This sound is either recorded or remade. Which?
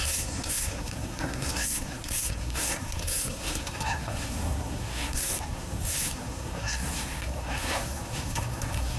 remade